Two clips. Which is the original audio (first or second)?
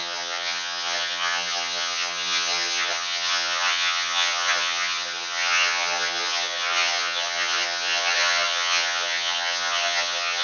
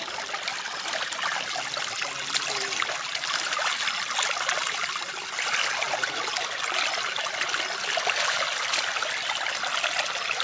second